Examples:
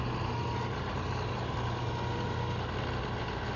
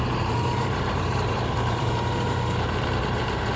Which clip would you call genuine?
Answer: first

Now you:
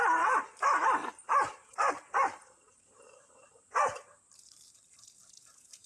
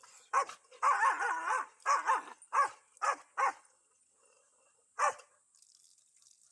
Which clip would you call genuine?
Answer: second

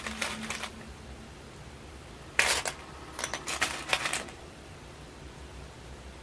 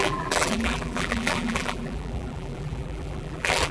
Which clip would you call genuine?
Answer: first